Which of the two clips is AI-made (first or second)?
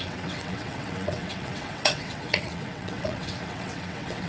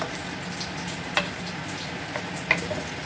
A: first